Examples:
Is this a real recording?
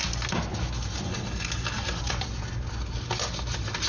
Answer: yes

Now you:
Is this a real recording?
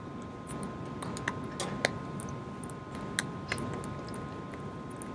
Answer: yes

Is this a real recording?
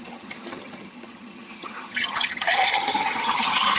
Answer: no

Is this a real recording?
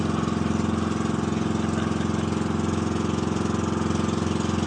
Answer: yes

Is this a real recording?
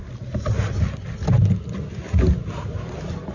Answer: yes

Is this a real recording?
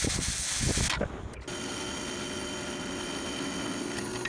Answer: yes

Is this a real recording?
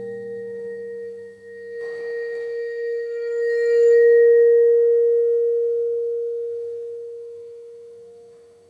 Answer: no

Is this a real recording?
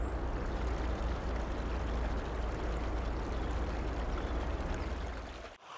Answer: yes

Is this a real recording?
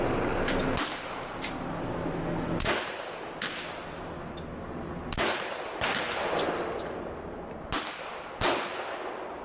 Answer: yes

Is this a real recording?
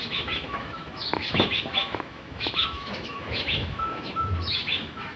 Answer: no